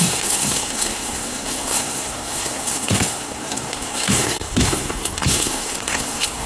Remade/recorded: remade